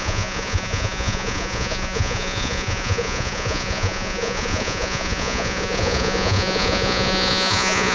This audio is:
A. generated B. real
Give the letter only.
A